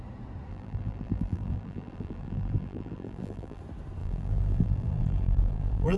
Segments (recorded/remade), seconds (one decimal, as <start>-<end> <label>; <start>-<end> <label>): 0.0-0.5 recorded; 0.5-3.6 remade; 3.6-4.0 recorded; 4.0-6.0 remade